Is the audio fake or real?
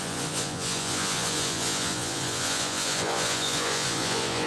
fake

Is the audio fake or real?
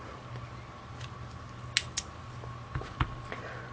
real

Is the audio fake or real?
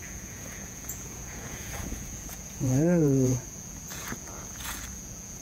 fake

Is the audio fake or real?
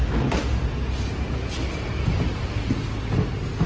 real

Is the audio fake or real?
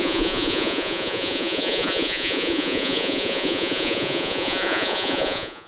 fake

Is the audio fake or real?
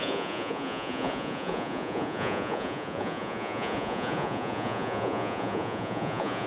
fake